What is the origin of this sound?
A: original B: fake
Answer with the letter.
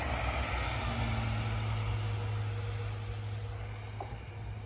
A